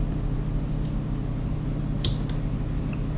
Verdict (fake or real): real